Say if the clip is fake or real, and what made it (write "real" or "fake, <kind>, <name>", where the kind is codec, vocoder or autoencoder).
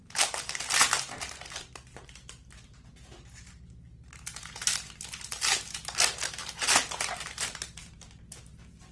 fake, vocoder, BigVGAN v2